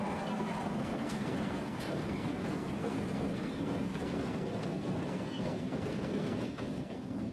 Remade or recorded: remade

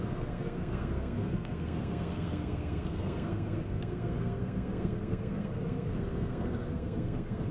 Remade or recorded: remade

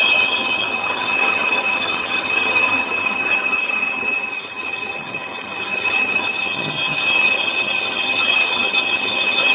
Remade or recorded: remade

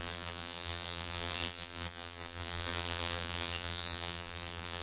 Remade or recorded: remade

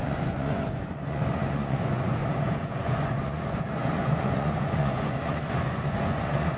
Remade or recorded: remade